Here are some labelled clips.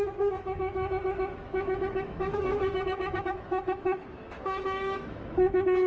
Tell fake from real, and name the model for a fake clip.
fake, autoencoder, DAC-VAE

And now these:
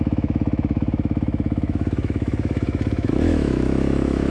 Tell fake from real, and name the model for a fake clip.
fake, autoencoder, DAC-VAE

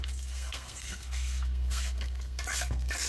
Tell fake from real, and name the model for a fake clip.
fake, codec, SNAC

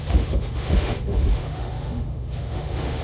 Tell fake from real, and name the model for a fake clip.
fake, autoencoder, DAC-VAE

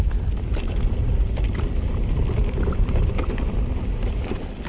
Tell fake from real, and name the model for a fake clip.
real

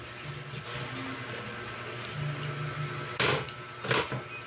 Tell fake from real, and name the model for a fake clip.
real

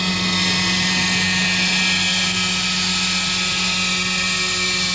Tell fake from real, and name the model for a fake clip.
real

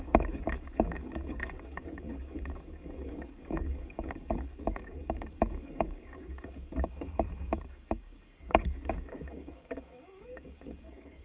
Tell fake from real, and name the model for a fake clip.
fake, codec, DAC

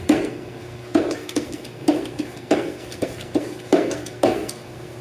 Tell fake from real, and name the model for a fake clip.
fake, codec, SNAC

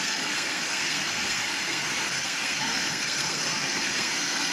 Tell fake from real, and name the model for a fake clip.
fake, codec, SNAC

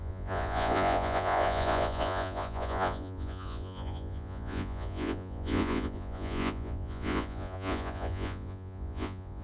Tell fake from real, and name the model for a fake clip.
fake, vocoder, Vocos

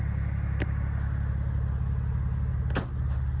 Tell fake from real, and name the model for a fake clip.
real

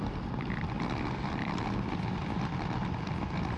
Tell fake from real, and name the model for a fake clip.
real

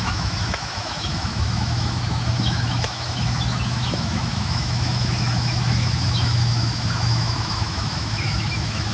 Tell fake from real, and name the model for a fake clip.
fake, autoencoder, DAC-VAE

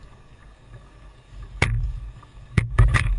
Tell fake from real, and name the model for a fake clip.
fake, codec, DAC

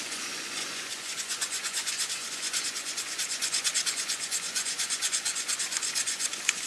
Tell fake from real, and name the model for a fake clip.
fake, vocoder, Vocos